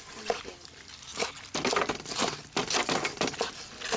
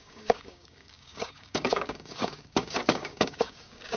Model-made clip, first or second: second